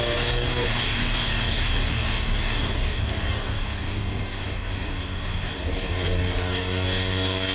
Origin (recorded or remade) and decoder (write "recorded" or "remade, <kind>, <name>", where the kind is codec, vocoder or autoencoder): remade, codec, DAC